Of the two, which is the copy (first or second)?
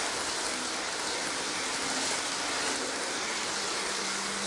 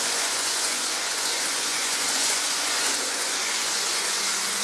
second